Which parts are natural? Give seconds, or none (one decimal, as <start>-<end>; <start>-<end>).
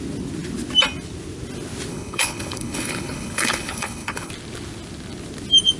0.0-1.9; 4.3-5.8